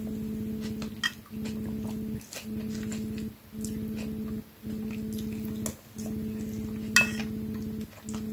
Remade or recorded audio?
recorded